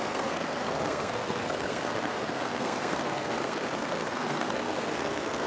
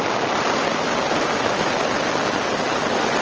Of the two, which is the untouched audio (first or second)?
second